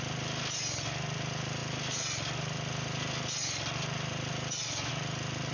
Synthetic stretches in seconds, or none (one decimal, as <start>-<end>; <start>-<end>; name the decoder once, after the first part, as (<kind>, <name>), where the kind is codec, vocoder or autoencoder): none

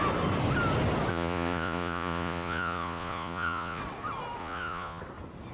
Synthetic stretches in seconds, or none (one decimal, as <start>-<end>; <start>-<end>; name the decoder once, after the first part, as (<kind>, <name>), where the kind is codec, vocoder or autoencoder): 1.1-3.8 (vocoder, Vocos); 4.4-5.0

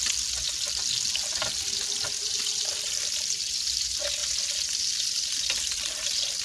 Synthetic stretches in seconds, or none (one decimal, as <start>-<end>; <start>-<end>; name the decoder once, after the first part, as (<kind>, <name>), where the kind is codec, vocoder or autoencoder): none